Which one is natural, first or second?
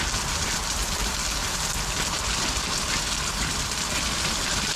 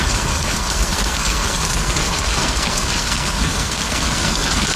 first